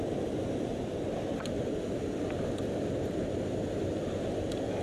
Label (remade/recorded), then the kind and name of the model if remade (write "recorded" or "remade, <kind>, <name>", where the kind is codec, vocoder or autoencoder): remade, vocoder, BigVGAN v2